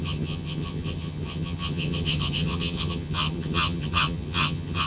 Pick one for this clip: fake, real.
fake